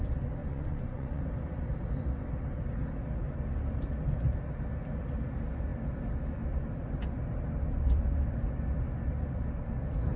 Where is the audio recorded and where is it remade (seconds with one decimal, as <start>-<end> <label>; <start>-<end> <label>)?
0.0-0.4 recorded; 0.4-1.2 remade; 1.2-10.2 recorded